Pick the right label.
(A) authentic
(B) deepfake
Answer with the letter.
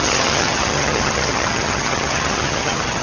B